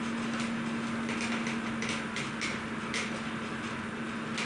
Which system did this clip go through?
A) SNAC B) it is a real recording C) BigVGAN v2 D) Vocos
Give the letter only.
B